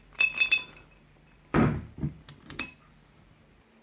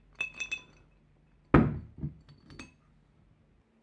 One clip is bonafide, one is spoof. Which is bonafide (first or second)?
second